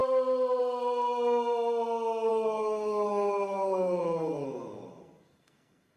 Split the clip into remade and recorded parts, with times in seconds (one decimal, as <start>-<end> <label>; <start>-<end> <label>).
0.0-2.3 recorded; 2.3-6.0 remade